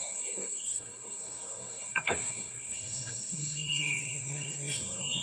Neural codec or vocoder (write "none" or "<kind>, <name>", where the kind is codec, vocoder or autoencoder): codec, SNAC